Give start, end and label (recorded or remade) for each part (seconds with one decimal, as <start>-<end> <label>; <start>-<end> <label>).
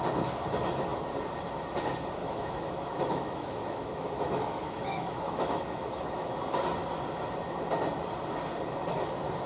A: 0.0-2.2 recorded; 2.2-6.4 remade; 6.4-9.5 recorded